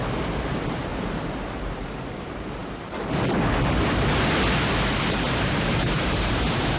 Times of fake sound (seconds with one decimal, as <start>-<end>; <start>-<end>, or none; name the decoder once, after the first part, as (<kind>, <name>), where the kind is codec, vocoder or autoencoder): 0.0-0.9 (vocoder, BigVGAN v2); 1.5-2.6; 4.9-6.8